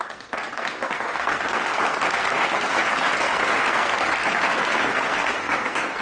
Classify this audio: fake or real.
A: fake